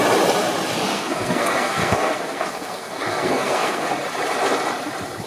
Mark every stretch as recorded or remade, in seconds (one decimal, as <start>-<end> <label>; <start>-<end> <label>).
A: 0.0-0.9 recorded; 0.9-3.9 remade; 3.9-5.3 recorded